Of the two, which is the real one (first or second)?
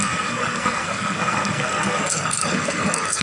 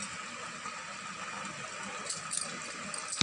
second